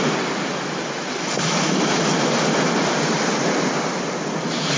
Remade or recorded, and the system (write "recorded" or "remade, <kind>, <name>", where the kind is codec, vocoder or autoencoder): recorded